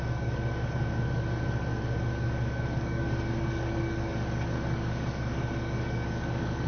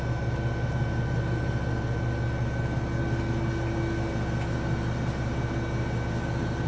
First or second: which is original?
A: second